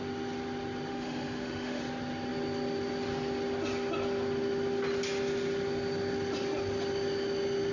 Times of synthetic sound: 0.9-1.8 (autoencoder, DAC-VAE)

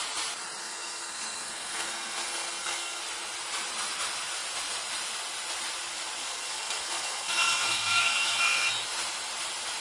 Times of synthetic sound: 0.6-3.0 (codec, SNAC); 6.2-8.7

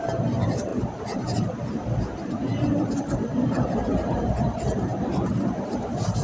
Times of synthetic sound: 0.0-4.9 (vocoder, BigVGAN v2); 5.6-6.2